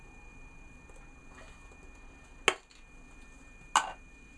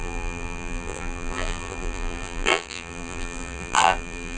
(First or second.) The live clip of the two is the first